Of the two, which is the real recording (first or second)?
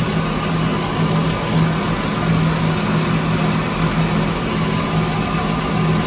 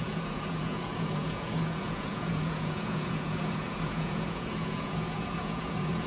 first